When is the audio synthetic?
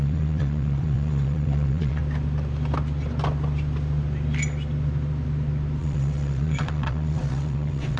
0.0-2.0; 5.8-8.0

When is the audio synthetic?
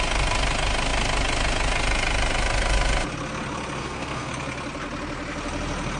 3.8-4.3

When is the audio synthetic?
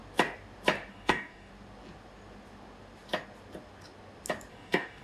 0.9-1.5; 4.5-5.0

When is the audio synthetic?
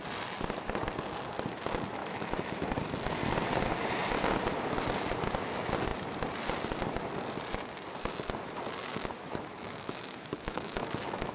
2.0-2.7; 8.9-11.3